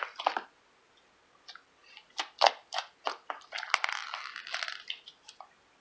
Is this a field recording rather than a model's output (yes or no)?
yes